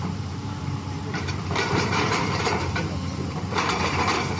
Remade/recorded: remade